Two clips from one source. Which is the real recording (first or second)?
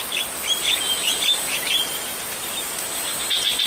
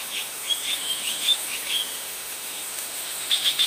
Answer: first